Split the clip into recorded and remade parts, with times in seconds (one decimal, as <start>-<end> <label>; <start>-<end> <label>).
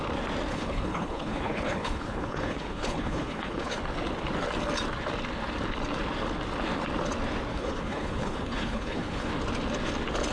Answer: 0.0-0.5 recorded; 0.5-3.8 remade; 3.8-7.5 recorded; 7.5-9.3 remade; 9.3-10.3 recorded